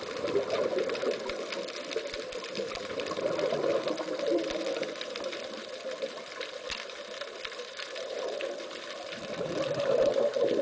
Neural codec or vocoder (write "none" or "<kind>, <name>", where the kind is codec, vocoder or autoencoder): none